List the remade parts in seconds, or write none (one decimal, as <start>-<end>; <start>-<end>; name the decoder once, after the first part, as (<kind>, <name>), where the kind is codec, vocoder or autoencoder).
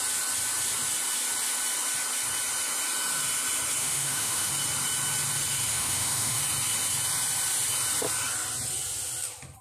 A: 3.8-4.5 (autoencoder, DAC-VAE); 5.7-6.4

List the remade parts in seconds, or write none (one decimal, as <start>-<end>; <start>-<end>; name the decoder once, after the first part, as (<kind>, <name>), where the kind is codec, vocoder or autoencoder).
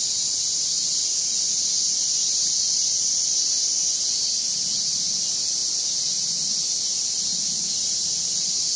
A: none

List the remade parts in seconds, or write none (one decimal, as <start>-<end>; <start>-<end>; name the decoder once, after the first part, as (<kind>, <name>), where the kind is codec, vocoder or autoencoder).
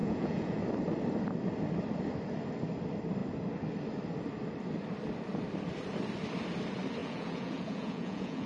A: 0.0-0.6 (vocoder, Vocos); 7.0-8.5